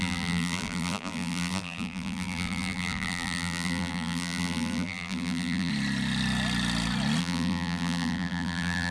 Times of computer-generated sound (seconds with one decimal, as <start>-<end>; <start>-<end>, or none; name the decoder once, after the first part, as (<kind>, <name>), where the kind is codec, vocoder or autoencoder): 0.0-5.7 (vocoder, BigVGAN v2); 7.2-8.9